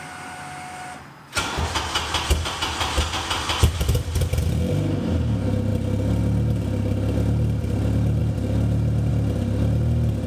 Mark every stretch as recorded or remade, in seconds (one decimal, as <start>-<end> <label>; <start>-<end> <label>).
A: 0.0-10.3 recorded